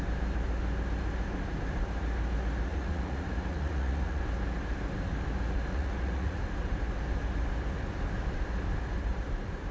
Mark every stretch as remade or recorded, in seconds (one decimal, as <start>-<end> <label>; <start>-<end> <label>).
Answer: 0.0-2.7 recorded; 2.7-4.2 remade; 4.2-5.7 recorded; 5.7-6.4 remade; 6.4-9.7 recorded